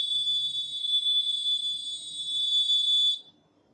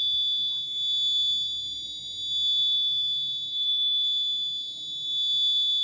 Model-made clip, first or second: first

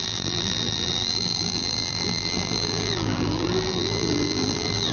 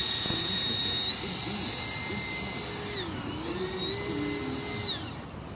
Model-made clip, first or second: first